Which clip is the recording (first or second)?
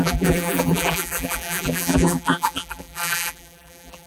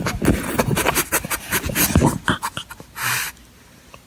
second